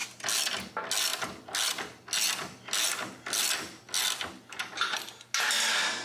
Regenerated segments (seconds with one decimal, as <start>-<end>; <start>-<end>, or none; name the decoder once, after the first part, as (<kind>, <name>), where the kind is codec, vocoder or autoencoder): none